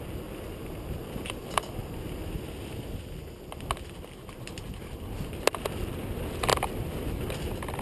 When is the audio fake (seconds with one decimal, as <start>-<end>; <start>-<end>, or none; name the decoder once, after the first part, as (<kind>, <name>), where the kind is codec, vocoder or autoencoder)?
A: 6.5-7.1 (vocoder, BigVGAN v2)